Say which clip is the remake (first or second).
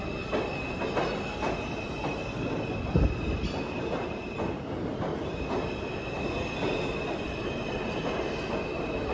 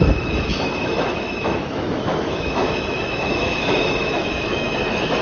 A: second